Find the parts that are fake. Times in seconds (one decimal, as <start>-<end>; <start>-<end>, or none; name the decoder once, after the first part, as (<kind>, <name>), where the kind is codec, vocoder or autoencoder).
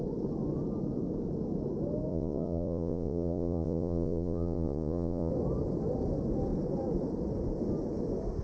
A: 2.1-5.3 (vocoder, Vocos)